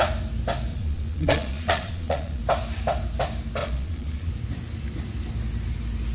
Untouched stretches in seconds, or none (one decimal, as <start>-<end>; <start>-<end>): 0.0-0.7; 2.4-3.6; 4.3-6.1